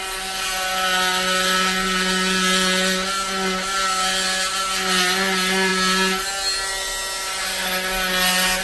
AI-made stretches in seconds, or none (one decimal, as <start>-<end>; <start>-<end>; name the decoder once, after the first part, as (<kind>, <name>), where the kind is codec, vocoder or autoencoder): none